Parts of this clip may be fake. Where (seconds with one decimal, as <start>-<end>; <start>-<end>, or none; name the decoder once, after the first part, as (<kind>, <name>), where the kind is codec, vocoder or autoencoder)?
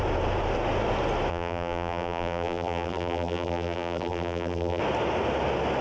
1.3-4.8 (vocoder, BigVGAN v2)